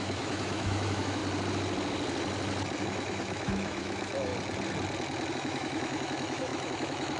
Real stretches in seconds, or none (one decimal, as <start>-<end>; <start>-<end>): 1.2-2.8; 4.3-5.3